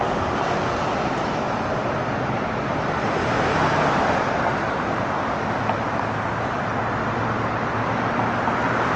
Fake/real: real